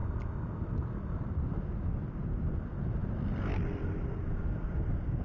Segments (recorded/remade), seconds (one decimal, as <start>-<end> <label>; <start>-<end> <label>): 0.0-5.2 recorded